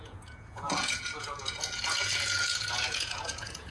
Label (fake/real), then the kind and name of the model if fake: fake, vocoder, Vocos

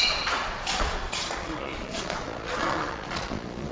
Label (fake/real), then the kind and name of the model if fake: fake, vocoder, Vocos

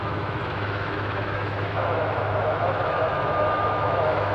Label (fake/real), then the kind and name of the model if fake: fake, autoencoder, DAC-VAE